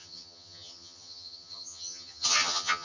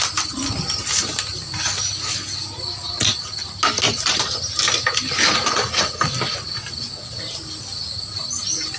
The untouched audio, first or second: second